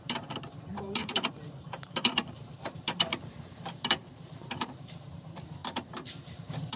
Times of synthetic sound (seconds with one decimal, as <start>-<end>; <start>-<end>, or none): 0.0-6.8